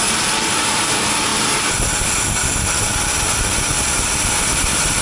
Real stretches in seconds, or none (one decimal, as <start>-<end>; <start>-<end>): 1.3-4.3